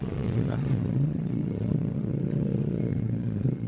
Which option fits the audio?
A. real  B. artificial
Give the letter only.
B